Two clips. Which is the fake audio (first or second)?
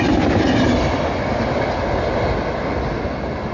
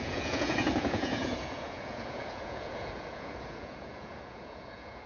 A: second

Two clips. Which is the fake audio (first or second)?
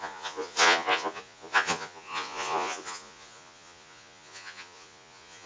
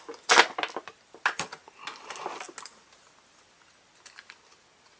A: first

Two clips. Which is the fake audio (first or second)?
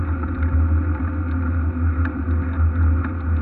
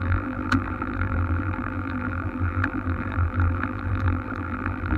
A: second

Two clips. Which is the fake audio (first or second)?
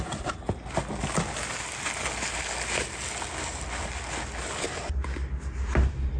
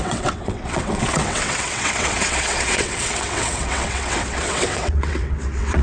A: second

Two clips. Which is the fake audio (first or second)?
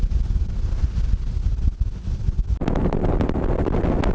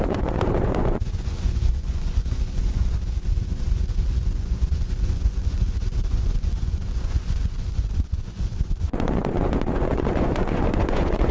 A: second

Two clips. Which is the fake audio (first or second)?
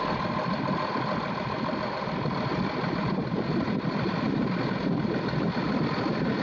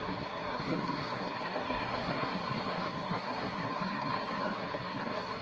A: second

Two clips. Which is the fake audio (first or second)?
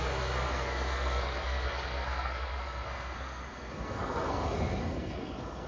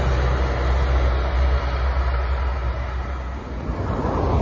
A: first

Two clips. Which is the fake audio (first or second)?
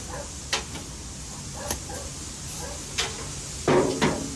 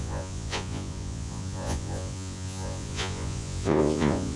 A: second